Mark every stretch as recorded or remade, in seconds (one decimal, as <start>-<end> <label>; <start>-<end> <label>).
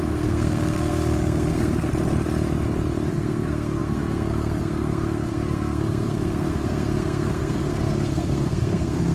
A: 0.0-1.9 remade; 1.9-3.1 recorded; 3.1-9.1 remade